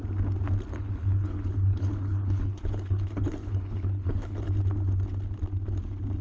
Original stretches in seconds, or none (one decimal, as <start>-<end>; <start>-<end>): 0.0-0.7; 4.4-6.2